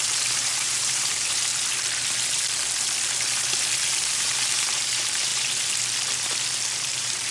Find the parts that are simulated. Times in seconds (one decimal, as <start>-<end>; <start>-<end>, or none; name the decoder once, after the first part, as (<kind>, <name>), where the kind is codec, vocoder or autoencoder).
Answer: 0.0-1.5 (vocoder, BigVGAN v2); 4.0-5.3; 6.7-7.3